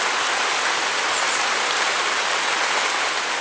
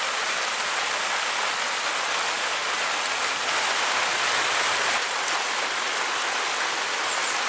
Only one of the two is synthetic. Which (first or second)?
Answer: first